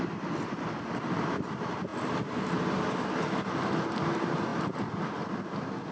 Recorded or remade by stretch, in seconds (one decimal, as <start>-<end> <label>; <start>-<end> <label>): 0.0-1.9 remade; 1.9-4.0 recorded; 4.0-4.5 remade; 4.5-5.9 recorded